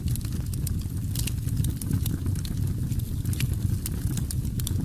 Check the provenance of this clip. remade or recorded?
recorded